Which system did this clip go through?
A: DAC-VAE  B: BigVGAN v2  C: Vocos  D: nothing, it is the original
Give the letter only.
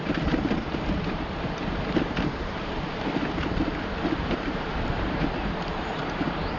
B